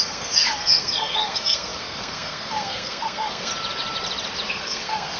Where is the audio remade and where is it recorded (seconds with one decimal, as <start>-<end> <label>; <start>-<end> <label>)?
0.0-3.5 remade; 3.5-4.5 recorded; 4.5-5.2 remade